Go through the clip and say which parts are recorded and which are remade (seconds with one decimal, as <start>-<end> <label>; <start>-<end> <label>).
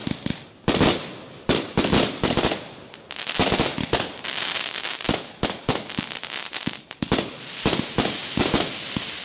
0.0-7.7 recorded; 7.7-8.4 remade; 8.4-9.2 recorded